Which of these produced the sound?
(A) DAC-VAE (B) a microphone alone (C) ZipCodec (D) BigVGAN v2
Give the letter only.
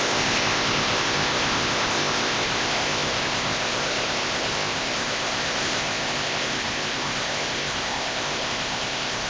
C